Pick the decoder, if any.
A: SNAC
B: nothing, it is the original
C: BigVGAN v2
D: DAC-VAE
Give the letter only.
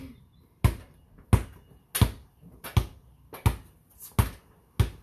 B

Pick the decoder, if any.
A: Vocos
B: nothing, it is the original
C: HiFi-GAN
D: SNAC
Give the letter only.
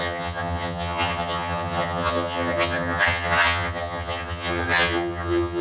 C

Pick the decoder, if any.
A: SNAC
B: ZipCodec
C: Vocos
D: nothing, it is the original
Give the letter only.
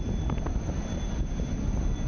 D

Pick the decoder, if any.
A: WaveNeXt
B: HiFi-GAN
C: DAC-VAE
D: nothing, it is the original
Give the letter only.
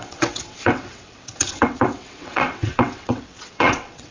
A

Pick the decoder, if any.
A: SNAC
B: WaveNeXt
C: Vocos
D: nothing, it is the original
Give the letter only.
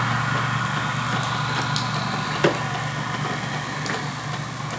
D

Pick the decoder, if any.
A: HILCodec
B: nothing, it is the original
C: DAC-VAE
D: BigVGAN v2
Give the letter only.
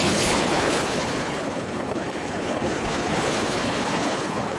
A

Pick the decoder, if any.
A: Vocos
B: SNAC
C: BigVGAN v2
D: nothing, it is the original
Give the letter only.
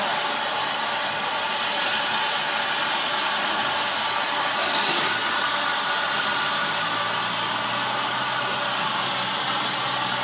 D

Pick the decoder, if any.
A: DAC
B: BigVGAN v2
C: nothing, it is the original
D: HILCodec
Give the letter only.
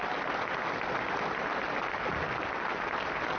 C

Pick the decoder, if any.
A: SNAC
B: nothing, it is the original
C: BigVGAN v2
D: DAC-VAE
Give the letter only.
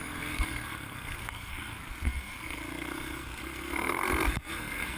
A